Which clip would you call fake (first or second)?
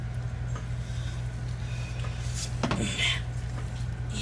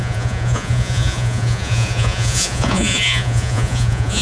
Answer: second